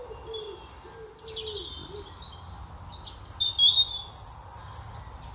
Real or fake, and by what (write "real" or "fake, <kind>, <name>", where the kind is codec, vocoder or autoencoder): real